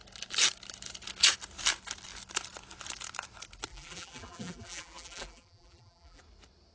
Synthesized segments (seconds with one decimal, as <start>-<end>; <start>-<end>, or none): 3.7-6.2